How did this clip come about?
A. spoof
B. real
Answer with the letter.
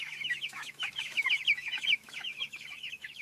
A